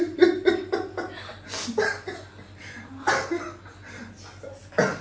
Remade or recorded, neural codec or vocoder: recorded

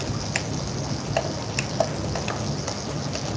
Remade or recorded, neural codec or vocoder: recorded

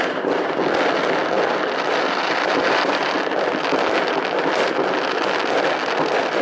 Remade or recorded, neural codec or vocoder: recorded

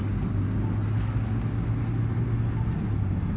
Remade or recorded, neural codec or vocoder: recorded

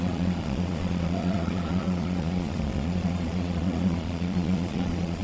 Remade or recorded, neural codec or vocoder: remade, vocoder, Vocos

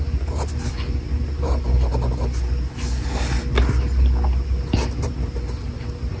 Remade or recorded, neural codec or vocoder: recorded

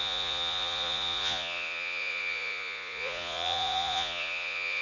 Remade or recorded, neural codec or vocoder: remade, vocoder, Vocos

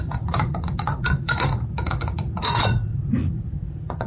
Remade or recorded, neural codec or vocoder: remade, vocoder, Vocos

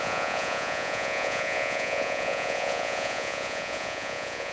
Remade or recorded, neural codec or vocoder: remade, vocoder, Vocos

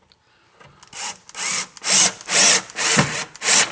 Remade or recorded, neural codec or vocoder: recorded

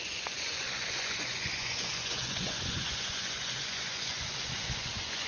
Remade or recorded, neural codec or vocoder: remade, vocoder, Vocos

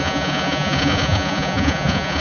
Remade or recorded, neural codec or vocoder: remade, vocoder, Vocos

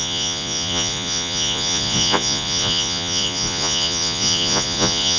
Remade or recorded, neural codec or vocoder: remade, vocoder, Vocos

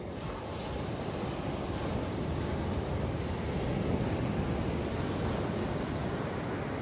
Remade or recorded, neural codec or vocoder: recorded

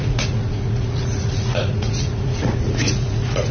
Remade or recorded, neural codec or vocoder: remade, vocoder, Vocos